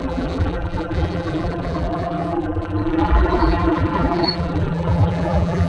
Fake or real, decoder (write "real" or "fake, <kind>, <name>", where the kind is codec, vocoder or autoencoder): fake, vocoder, BigVGAN v2